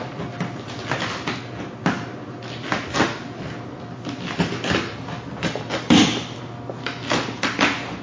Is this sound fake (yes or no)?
no